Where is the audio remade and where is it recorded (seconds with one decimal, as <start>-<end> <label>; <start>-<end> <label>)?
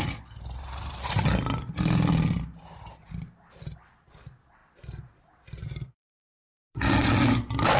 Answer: 0.0-7.8 recorded